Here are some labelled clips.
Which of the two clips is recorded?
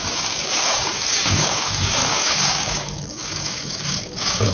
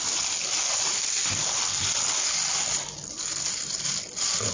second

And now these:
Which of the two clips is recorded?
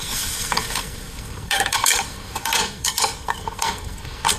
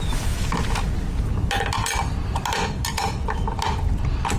second